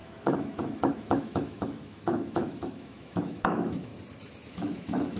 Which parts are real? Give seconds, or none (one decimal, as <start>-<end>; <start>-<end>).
3.9-4.5